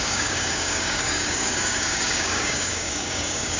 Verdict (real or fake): fake